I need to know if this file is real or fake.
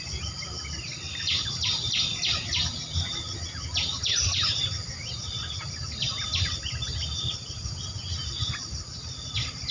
real